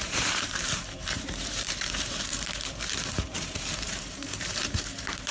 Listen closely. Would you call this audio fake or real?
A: fake